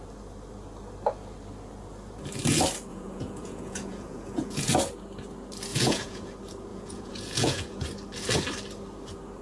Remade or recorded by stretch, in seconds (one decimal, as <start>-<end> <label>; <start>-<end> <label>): 0.0-2.9 recorded; 2.9-4.7 remade; 4.7-5.7 recorded; 5.7-6.3 remade; 6.3-6.7 recorded; 6.7-7.8 remade; 7.8-9.4 recorded